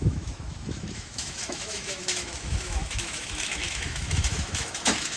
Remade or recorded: remade